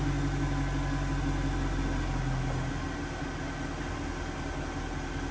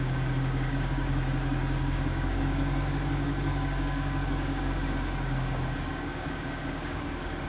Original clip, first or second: first